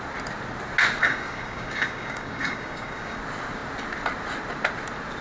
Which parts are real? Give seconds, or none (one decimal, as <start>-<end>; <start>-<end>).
0.0-1.0; 3.2-5.2